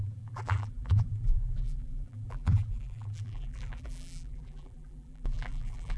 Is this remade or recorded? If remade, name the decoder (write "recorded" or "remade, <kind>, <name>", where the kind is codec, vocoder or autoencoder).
remade, vocoder, BigVGAN v2